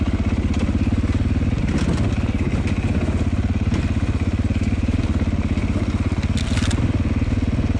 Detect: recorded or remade recorded